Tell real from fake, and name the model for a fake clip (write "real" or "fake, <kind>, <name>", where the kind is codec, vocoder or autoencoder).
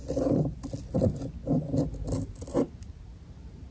real